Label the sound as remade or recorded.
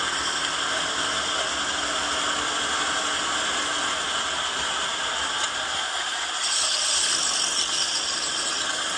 recorded